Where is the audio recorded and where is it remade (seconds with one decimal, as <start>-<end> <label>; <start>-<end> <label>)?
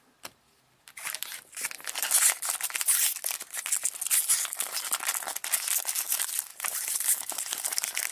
0.0-6.5 recorded; 6.5-8.1 remade